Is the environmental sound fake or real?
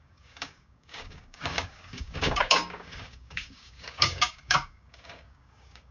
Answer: fake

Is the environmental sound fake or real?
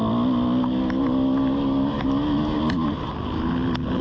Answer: real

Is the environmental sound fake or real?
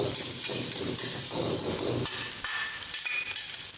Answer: real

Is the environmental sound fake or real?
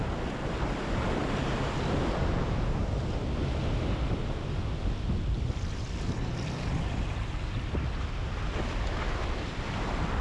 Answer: real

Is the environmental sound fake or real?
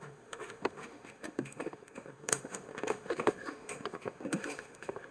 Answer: fake